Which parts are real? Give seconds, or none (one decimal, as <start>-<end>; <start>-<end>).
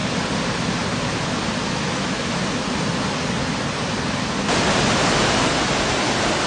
0.0-1.6; 2.4-6.5